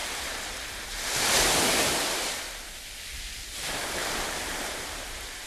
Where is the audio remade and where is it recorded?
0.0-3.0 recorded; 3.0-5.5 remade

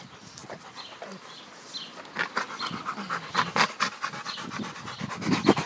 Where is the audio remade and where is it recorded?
0.0-5.7 recorded

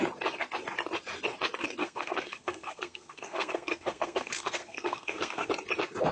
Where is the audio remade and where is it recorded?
0.0-1.8 recorded; 1.8-5.5 remade; 5.5-6.1 recorded

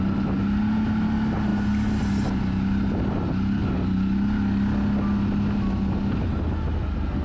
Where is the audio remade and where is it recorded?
0.0-7.2 recorded